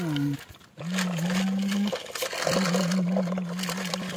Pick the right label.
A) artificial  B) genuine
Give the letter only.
B